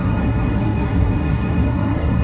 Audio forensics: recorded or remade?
remade